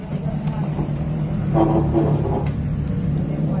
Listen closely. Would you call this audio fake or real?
real